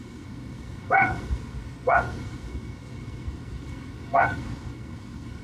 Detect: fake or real fake